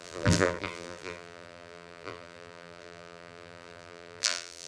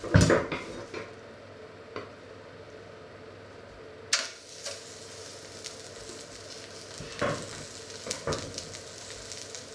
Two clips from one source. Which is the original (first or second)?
second